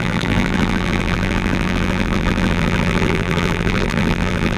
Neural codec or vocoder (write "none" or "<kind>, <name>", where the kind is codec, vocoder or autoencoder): vocoder, BigVGAN v2